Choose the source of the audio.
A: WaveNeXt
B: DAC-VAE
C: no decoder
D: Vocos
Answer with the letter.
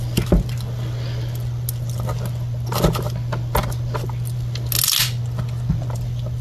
C